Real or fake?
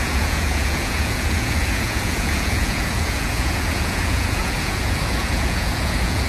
fake